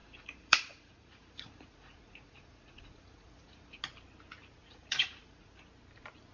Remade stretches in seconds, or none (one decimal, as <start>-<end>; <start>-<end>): 0.0-3.8; 4.6-5.5